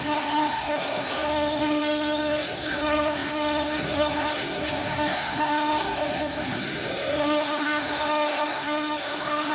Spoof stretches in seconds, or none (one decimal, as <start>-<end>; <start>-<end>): 0.0-9.5